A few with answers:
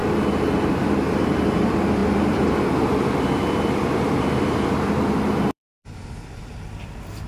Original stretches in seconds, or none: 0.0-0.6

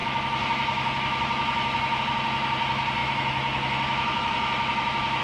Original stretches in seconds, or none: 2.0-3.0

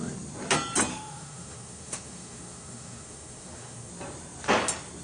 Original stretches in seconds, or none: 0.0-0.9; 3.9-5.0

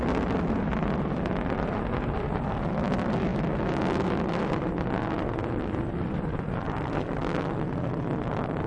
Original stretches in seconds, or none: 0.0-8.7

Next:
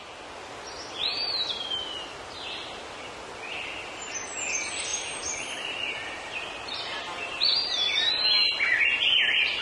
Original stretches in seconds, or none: 0.0-4.9; 8.1-9.6

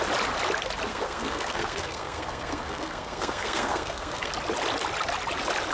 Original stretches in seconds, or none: 0.0-0.9; 4.3-5.7